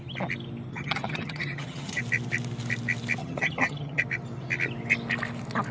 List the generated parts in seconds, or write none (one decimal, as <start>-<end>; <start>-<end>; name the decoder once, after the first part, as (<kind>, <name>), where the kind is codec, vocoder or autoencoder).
0.7-2.0 (vocoder, HiFi-GAN); 3.2-4.0